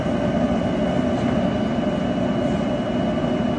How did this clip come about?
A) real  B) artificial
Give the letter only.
A